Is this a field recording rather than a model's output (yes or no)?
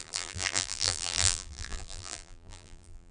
no